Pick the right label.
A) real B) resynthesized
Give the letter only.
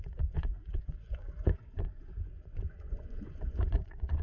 B